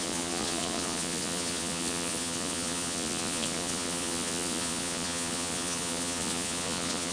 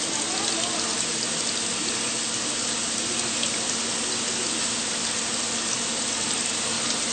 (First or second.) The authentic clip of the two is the second